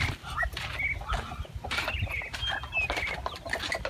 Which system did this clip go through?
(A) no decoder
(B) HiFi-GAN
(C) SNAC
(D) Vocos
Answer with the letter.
A